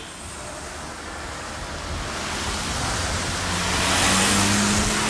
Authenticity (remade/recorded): recorded